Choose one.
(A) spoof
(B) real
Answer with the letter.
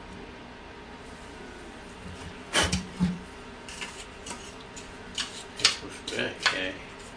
A